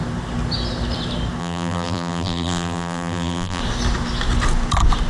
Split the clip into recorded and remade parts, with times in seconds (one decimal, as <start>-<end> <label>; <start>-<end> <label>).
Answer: 0.0-1.4 recorded; 1.4-3.6 remade; 3.6-5.1 recorded